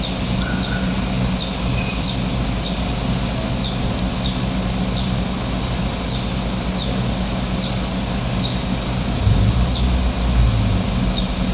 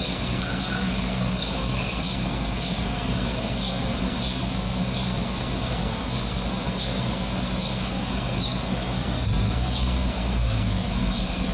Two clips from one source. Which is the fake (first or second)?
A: second